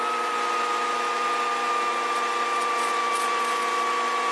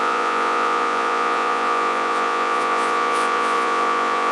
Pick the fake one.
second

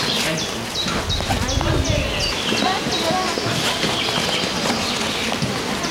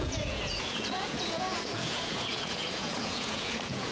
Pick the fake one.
second